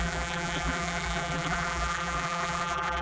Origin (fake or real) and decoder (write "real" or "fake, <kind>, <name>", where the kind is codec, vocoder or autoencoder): fake, vocoder, BigVGAN v2